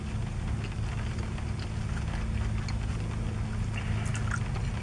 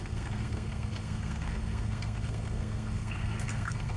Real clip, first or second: first